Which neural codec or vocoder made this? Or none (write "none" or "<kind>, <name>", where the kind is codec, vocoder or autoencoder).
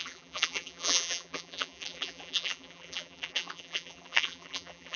vocoder, BigVGAN v2